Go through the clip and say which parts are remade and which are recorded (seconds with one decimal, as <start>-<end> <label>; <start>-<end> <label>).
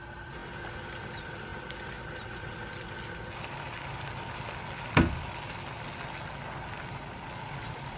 0.0-8.0 recorded